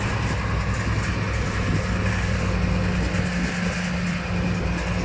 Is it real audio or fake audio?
real